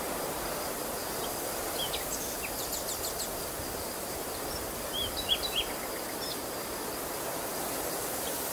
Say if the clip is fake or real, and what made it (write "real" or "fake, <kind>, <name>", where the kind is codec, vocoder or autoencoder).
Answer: real